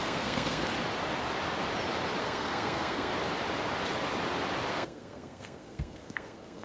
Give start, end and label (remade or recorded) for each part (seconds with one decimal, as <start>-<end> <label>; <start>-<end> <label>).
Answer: 0.0-0.7 remade; 0.7-2.2 recorded; 2.2-3.1 remade; 3.1-4.7 recorded; 4.7-6.6 remade